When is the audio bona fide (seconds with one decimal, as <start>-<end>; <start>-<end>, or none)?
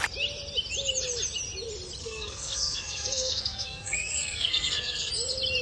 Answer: 0.0-2.0; 5.1-5.6